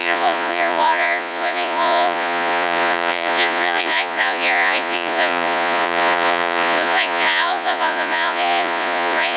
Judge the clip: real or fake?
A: fake